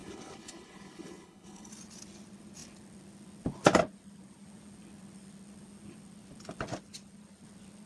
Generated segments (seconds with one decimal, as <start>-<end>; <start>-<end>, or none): 0.0-1.7